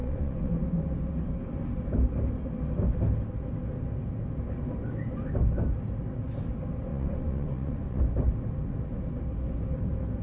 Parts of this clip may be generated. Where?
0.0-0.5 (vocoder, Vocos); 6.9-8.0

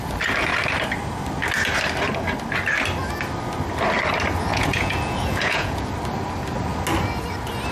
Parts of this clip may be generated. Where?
4.5-5.9 (vocoder, Vocos)

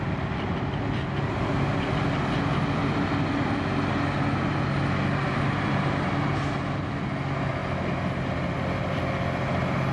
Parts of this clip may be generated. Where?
none

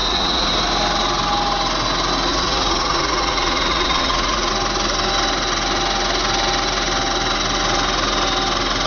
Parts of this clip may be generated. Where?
0.0-0.5 (vocoder, Vocos); 2.3-4.5

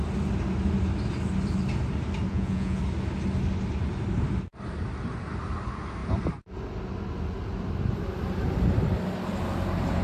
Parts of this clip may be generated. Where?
2.3-2.8 (vocoder, Vocos)

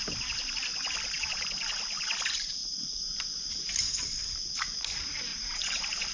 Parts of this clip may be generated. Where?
none